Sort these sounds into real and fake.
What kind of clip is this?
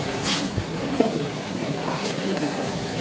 fake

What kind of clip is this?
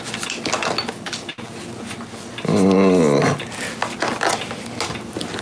real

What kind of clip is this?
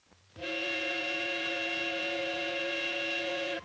fake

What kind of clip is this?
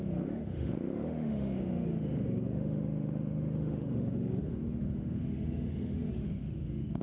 fake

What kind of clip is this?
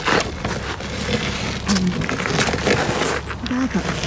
real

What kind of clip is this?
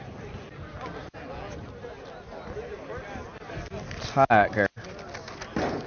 real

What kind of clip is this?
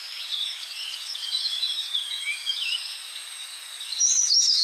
fake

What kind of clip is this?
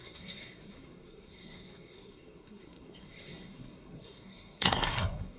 fake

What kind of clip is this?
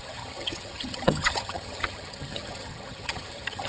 fake